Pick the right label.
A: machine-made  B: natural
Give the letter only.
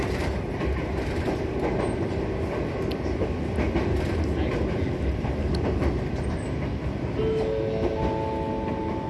B